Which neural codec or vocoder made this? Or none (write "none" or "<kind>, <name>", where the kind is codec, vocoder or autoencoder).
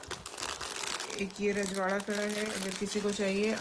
none